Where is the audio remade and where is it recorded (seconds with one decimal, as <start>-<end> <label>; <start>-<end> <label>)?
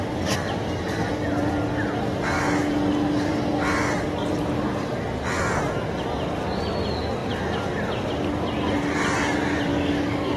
0.0-9.7 recorded; 9.7-10.4 remade